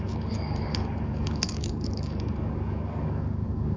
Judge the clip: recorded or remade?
remade